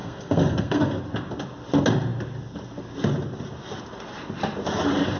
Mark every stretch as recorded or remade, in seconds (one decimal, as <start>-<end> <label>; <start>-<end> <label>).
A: 0.0-1.0 remade; 1.0-5.2 recorded